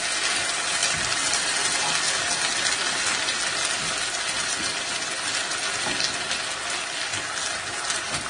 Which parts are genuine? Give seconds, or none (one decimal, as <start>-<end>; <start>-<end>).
0.0-8.3